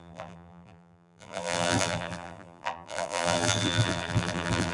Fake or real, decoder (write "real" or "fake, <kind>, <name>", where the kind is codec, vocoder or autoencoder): fake, vocoder, BigVGAN v2